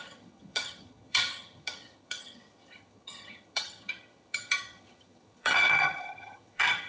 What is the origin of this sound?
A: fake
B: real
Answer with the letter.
A